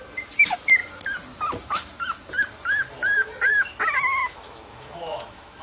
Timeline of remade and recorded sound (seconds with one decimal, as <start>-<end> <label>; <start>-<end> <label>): 0.0-4.2 recorded; 4.2-5.6 remade